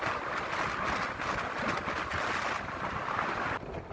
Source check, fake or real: real